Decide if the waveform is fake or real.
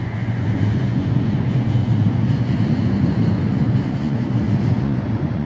fake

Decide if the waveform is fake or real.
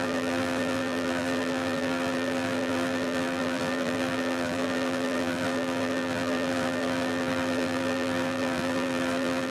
fake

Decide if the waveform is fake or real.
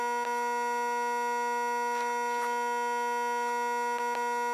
real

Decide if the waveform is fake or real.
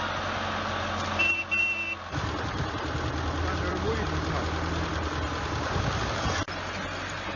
real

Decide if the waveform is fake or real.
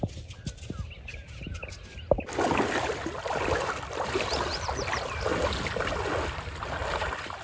real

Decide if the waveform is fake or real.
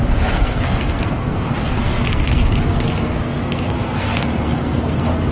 fake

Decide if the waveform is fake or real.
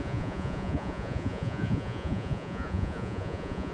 fake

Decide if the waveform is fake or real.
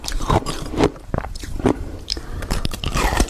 fake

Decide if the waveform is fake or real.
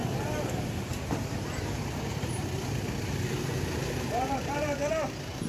fake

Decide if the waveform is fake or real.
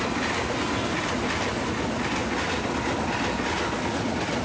real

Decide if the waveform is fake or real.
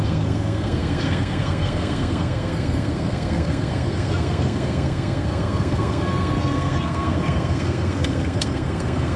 fake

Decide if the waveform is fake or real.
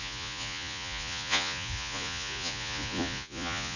fake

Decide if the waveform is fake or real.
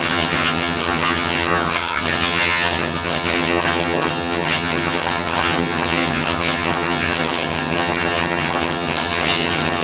fake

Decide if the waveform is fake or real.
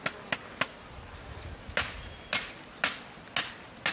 real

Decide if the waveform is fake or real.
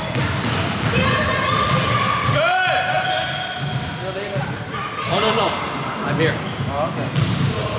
real